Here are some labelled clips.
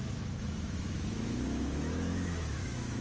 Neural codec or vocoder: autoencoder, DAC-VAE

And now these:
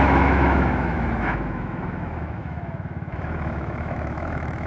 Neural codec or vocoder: autoencoder, DAC-VAE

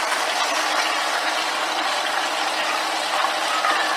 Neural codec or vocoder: none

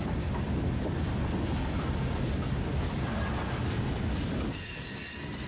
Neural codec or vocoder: none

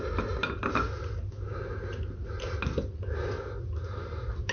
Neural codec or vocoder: none